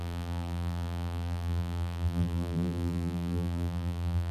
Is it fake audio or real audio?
fake